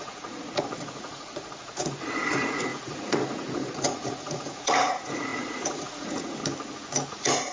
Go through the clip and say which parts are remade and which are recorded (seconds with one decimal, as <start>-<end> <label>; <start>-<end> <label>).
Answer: 0.0-6.4 remade; 6.4-7.1 recorded; 7.1-7.5 remade